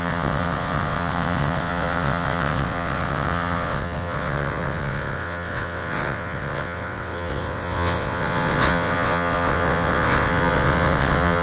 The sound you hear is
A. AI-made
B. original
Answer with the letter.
A